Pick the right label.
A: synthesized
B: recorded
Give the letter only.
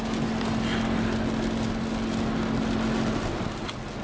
B